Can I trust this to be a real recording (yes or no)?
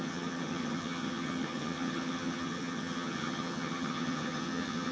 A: no